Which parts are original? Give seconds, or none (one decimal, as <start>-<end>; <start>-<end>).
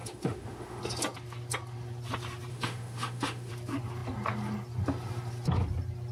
0.8-2.5; 3.5-6.1